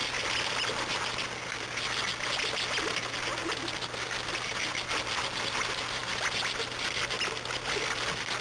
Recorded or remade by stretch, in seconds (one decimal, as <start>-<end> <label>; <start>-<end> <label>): 0.0-8.4 recorded